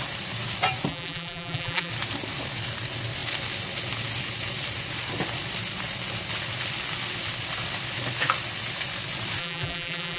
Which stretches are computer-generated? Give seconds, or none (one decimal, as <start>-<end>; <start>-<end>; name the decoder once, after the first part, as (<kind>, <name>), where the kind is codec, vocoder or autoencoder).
0.9-1.9 (vocoder, BigVGAN v2); 9.4-10.2